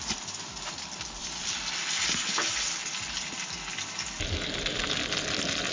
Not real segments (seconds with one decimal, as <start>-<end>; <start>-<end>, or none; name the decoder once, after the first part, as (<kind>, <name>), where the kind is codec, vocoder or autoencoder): none